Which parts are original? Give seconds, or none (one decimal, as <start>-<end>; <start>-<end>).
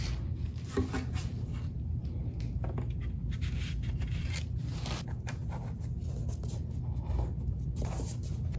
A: 0.0-3.2; 4.4-8.6